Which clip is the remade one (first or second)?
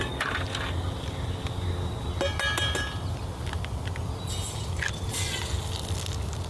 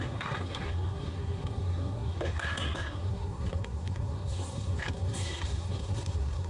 second